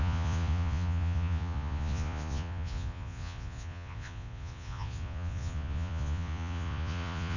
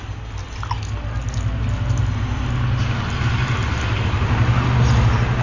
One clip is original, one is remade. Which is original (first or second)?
second